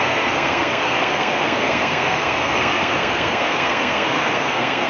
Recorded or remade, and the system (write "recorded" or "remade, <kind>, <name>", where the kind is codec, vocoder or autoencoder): remade, codec, SNAC